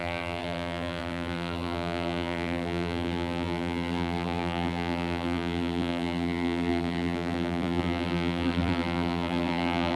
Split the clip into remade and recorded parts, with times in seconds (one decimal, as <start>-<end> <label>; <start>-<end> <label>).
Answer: 0.0-10.0 remade